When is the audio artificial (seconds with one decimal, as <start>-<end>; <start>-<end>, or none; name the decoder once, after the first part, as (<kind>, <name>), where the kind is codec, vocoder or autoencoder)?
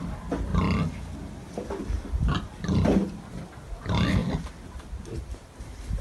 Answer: none